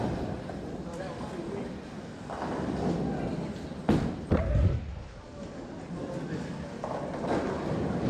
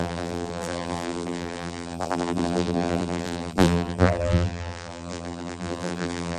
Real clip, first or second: first